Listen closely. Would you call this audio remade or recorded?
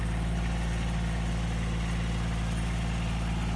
recorded